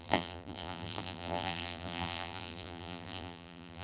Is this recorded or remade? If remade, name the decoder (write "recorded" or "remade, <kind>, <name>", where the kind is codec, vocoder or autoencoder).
remade, vocoder, BigVGAN v2